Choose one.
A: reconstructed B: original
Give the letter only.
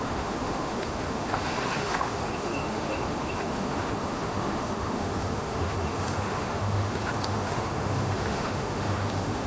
A